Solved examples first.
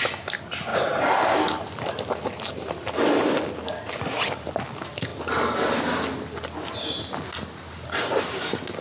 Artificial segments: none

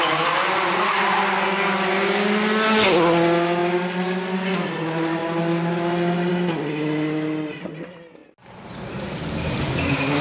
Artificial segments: none

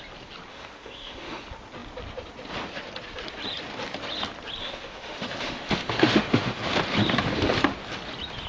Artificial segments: 0.5-1.4 (autoencoder, DAC-VAE); 4.6-6.7

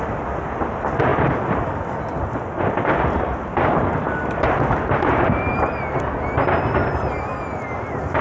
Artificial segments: 1.1-6.0 (vocoder, BigVGAN v2)

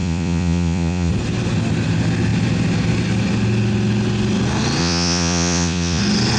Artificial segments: 0.0-1.1 (vocoder, Vocos); 4.8-6.0

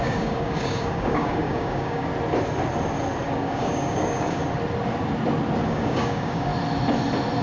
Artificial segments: 0.0-2.1 (codec, DAC); 3.3-4.4; 5.7-6.5